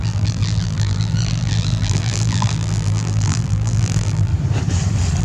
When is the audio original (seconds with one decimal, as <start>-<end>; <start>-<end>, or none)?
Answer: 4.3-5.2